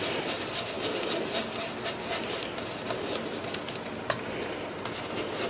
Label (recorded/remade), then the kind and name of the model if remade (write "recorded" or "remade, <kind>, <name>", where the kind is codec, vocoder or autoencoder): recorded